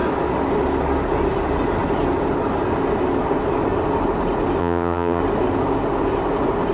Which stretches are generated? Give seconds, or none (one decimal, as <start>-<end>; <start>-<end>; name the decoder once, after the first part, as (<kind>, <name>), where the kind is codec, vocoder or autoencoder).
4.6-5.2 (vocoder, HiFi-GAN)